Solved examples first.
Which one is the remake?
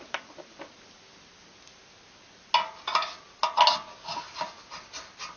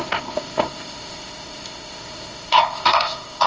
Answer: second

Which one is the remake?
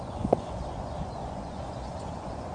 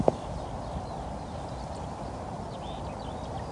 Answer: first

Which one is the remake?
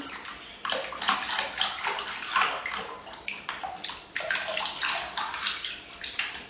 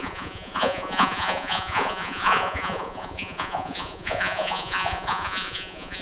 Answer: second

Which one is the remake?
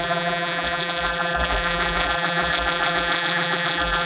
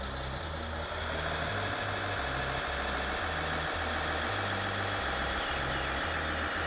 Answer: first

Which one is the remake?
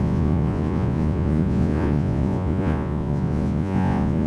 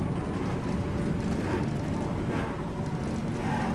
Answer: first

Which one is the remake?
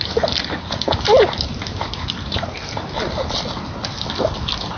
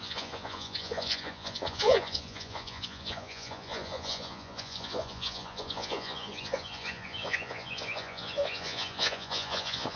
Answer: second